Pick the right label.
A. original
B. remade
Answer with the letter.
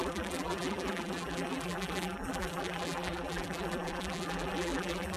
B